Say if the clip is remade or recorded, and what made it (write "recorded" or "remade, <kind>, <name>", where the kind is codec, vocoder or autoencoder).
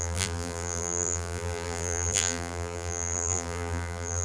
remade, vocoder, BigVGAN v2